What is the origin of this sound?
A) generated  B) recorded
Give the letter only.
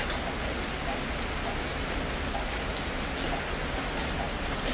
B